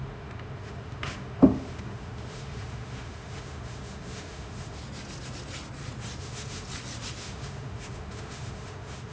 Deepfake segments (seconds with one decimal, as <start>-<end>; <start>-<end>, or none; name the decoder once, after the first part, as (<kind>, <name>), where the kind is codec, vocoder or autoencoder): 0.0-4.8 (autoencoder, DAC-VAE); 6.2-6.7; 7.2-9.1